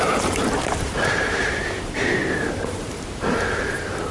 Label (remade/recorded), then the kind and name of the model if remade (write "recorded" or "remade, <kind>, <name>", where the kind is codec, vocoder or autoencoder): remade, vocoder, BigVGAN v2